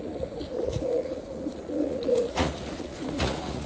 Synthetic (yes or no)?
yes